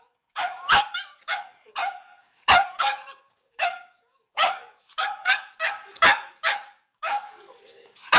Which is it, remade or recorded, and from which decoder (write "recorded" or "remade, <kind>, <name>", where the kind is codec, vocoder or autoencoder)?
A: remade, codec, DAC